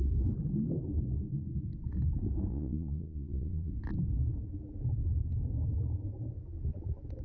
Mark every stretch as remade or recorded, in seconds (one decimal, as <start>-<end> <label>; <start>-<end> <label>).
0.0-2.5 recorded; 2.5-3.7 remade; 3.7-7.2 recorded